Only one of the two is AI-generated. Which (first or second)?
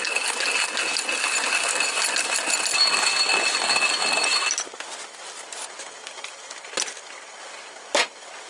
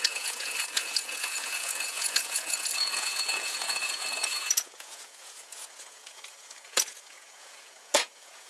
second